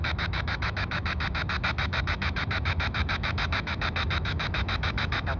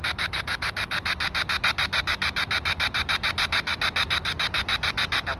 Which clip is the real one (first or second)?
second